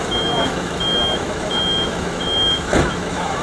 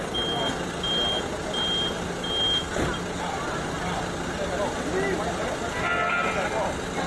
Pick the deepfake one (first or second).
first